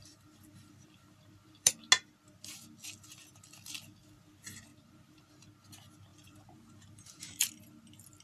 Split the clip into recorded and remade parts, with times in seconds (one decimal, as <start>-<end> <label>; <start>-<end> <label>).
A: 0.0-1.7 remade; 1.7-4.7 recorded; 4.7-5.3 remade; 5.3-6.1 recorded; 6.1-7.5 remade; 7.5-8.2 recorded

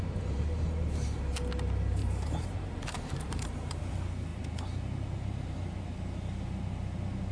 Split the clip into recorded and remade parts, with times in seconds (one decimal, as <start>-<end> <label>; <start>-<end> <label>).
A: 0.0-2.0 recorded; 2.0-3.8 remade; 3.8-7.3 recorded

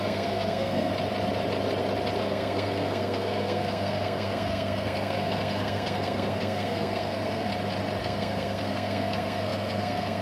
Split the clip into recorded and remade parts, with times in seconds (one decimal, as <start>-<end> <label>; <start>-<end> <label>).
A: 0.0-0.9 remade; 0.9-2.2 recorded; 2.2-7.5 remade; 7.5-8.0 recorded; 8.0-10.2 remade

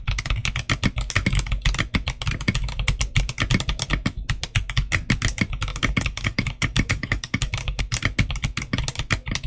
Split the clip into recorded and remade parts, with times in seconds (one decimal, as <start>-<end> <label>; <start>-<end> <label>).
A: 0.0-5.7 recorded; 5.7-7.8 remade; 7.8-9.5 recorded

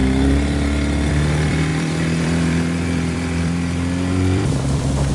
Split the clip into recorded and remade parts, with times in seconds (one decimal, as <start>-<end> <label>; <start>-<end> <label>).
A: 0.0-1.1 recorded; 1.1-5.1 remade

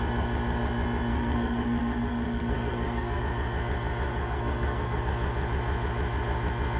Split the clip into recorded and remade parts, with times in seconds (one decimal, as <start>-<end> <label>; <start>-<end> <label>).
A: 0.0-1.1 recorded; 1.1-3.2 remade; 3.2-4.1 recorded; 4.1-5.0 remade; 5.0-6.8 recorded

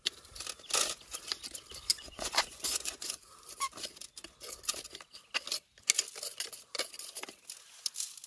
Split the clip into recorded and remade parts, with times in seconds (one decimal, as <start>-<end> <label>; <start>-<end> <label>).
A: 0.0-1.9 recorded; 1.9-3.3 remade; 3.3-8.3 recorded

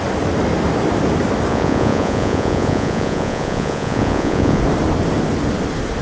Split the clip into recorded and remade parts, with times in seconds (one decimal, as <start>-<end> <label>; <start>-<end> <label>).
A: 0.0-1.5 recorded; 1.5-4.6 remade; 4.6-6.0 recorded